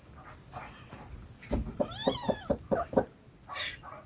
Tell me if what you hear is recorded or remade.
recorded